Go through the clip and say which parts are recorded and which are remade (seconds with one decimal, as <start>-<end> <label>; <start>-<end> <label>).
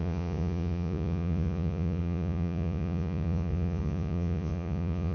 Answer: 0.0-5.1 remade